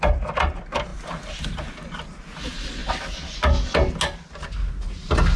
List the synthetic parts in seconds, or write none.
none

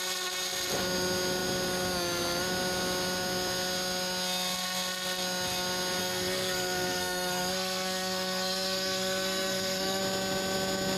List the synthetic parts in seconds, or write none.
6.0-10.0 (codec, SNAC)